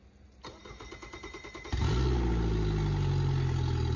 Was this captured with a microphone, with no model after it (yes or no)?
yes